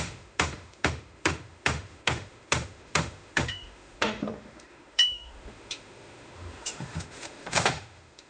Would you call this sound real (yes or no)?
no